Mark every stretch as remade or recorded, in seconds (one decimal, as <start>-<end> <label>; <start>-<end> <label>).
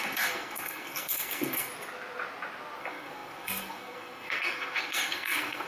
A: 0.0-1.7 remade; 1.7-2.8 recorded; 2.8-5.7 remade